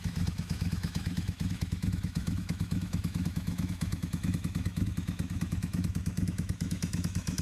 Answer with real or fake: fake